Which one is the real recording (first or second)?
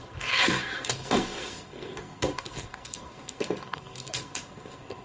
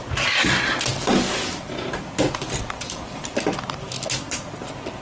second